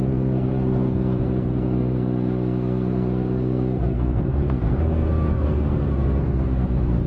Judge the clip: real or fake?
fake